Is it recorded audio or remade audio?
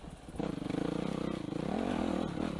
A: recorded